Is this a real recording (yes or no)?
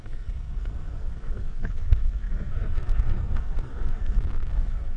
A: no